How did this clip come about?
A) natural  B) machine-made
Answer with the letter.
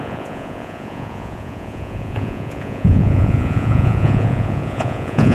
B